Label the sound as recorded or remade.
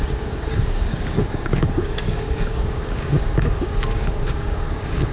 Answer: remade